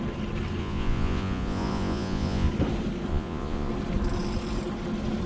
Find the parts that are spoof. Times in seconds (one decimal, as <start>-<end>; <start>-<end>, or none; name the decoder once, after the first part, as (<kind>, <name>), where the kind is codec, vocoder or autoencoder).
0.6-2.5 (vocoder, Vocos); 3.1-3.7